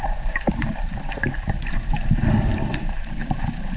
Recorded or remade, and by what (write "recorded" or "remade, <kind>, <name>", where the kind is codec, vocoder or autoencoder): remade, vocoder, BigVGAN v2